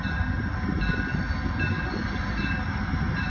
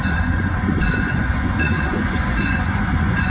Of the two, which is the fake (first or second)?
second